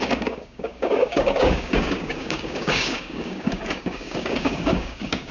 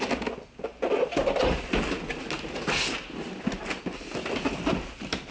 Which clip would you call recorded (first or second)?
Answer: second